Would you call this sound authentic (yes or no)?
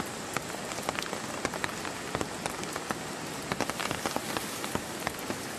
no